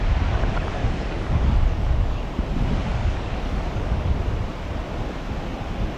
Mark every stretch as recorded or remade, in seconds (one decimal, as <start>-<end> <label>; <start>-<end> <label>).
0.0-0.5 recorded; 0.5-2.2 remade; 2.2-2.9 recorded; 2.9-4.2 remade; 4.2-6.0 recorded